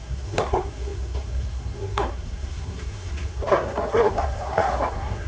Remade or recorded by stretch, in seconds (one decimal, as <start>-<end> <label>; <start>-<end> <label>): 0.0-5.3 remade